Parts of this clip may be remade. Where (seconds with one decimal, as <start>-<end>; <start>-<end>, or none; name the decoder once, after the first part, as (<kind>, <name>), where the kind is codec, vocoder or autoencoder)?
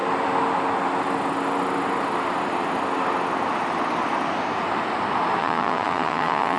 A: 5.4-6.6 (vocoder, Vocos)